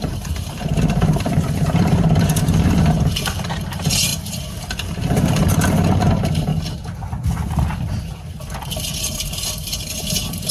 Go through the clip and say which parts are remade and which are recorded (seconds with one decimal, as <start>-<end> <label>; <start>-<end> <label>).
0.0-6.5 remade; 6.5-9.0 recorded; 9.0-10.5 remade